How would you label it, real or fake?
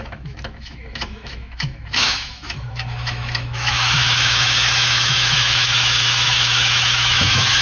fake